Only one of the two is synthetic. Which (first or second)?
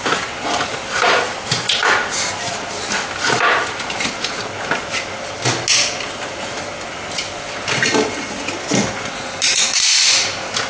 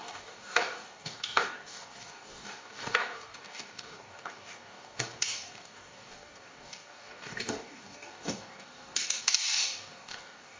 second